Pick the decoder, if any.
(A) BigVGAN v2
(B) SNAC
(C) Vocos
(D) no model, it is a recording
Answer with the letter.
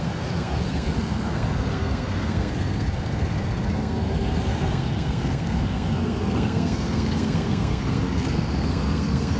B